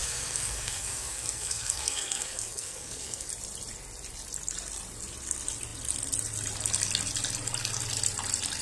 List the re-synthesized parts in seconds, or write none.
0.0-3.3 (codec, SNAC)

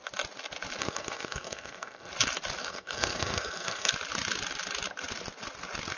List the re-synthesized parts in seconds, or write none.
0.8-2.1 (codec, SNAC); 2.6-3.9

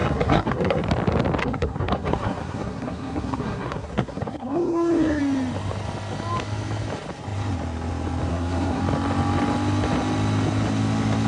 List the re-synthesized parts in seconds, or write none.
0.0-0.8 (codec, SNAC); 1.4-5.2; 8.3-8.8

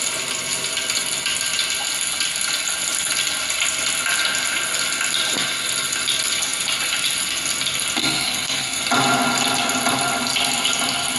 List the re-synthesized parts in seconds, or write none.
8.0-8.8 (codec, SNAC)

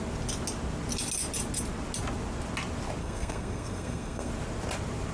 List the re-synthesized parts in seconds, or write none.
3.0-4.3 (codec, SNAC)